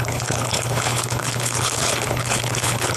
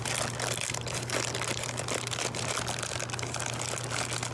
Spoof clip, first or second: first